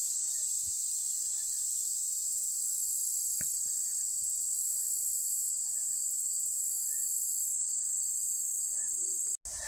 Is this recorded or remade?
recorded